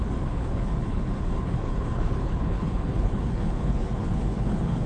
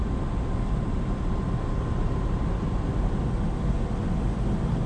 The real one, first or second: second